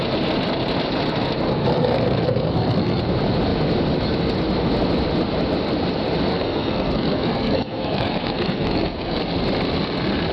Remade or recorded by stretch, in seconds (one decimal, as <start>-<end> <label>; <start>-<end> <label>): 0.0-1.6 recorded; 1.6-3.0 remade; 3.0-6.3 recorded; 6.3-9.2 remade; 9.2-10.3 recorded